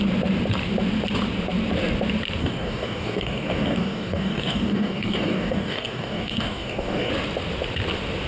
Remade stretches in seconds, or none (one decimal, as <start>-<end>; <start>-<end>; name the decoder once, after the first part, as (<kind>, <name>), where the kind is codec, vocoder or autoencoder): 2.4-7.1 (codec, DAC)